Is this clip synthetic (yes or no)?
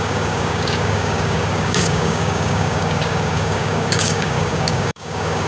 yes